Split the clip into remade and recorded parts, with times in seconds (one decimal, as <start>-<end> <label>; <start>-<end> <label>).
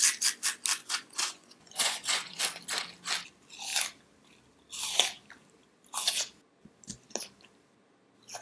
0.0-0.8 recorded; 0.8-2.4 remade; 2.4-8.4 recorded